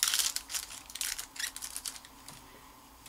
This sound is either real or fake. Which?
real